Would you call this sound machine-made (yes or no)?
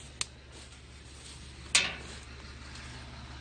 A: no